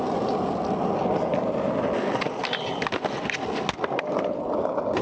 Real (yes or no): yes